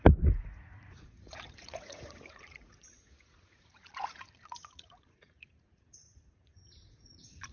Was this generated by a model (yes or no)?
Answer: yes